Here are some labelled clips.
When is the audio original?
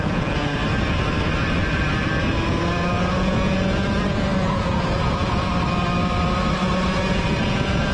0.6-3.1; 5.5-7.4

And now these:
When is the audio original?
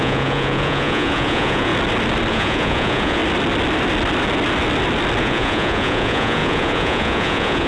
1.7-2.3; 3.2-5.2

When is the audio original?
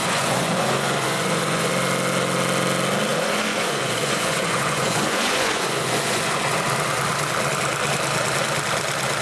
1.7-3.1; 6.6-9.2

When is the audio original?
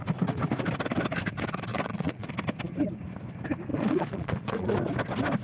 0.0-1.7; 2.3-3.7; 4.8-5.4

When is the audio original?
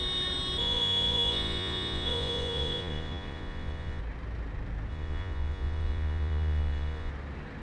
0.0-0.6; 4.0-4.9; 7.1-7.6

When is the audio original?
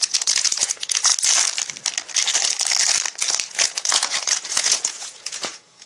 1.1-3.5